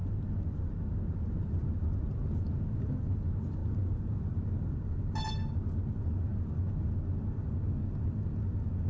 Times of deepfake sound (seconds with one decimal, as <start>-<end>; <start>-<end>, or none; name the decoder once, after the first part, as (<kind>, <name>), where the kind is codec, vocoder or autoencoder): 0.0-2.7 (vocoder, BigVGAN v2); 3.6-6.9